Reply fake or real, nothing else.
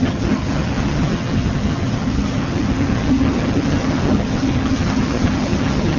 fake